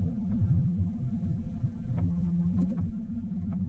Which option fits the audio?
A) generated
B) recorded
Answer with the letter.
A